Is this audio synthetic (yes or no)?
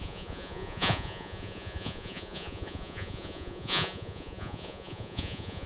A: yes